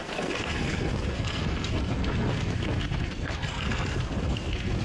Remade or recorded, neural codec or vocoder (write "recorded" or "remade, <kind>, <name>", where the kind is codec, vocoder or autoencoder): remade, codec, SNAC